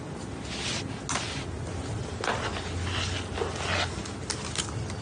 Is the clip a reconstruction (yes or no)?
no